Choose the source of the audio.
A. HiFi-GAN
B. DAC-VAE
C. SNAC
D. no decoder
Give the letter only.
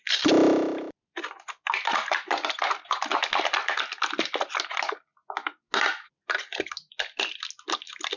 D